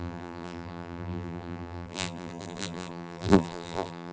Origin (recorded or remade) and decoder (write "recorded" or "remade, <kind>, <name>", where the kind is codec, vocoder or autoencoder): remade, vocoder, BigVGAN v2